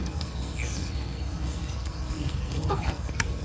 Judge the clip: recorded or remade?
remade